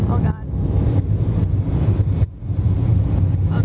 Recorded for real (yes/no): yes